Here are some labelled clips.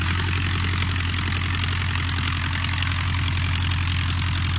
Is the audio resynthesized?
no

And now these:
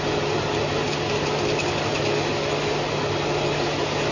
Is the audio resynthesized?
no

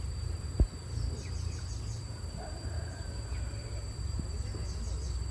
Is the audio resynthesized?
yes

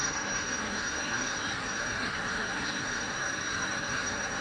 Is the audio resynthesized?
yes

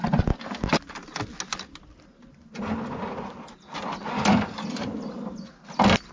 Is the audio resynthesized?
no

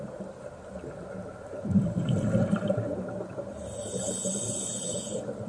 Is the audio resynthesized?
no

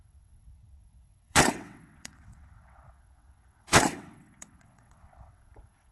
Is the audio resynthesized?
yes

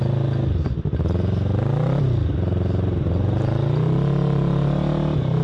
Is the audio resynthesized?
no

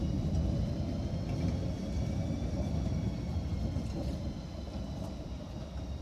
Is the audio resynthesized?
no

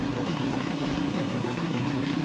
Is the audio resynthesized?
yes